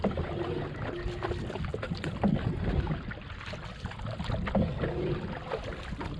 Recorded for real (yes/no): yes